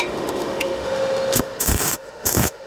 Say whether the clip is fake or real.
fake